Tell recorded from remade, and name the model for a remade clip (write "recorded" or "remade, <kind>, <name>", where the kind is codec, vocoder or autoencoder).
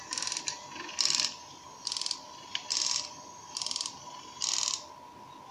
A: recorded